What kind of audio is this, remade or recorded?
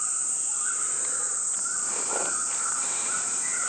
recorded